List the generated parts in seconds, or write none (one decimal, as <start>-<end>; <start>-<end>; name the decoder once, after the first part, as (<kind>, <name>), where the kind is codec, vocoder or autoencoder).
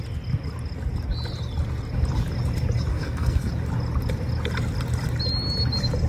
2.9-3.5 (codec, SNAC)